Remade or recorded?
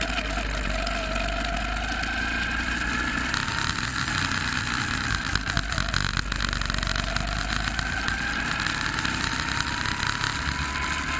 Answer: recorded